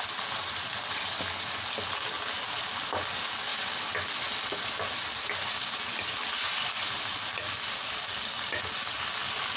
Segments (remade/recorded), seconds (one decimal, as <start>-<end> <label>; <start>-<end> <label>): 0.0-9.6 recorded